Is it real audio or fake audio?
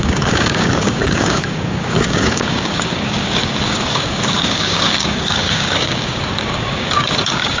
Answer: fake